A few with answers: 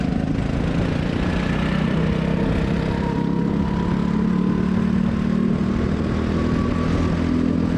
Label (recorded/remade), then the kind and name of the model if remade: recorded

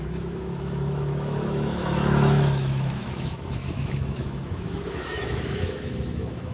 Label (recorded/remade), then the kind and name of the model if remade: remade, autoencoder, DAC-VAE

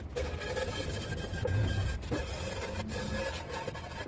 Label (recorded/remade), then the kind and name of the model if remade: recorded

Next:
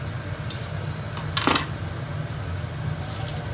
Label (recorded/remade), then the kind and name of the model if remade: recorded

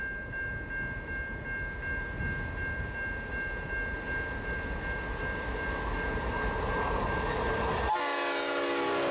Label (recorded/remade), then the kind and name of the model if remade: recorded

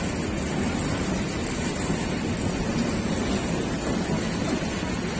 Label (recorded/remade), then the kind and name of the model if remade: recorded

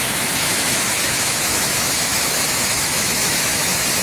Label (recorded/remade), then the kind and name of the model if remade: remade, autoencoder, DAC-VAE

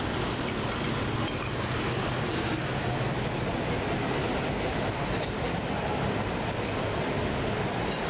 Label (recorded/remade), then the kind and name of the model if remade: recorded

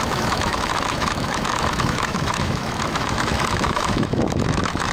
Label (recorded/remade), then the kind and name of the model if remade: remade, autoencoder, DAC-VAE